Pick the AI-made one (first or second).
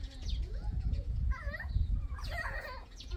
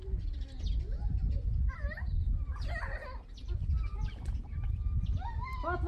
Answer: first